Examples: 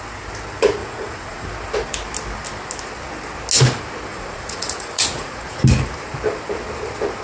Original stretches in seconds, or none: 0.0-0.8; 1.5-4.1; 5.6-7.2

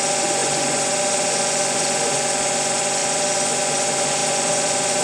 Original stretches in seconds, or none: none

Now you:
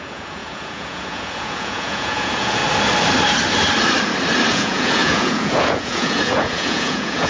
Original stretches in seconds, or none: 2.6-4.5

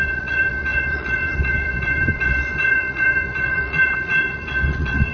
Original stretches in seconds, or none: none

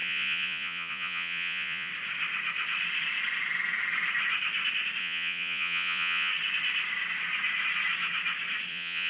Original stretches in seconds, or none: 1.9-5.0; 6.3-8.7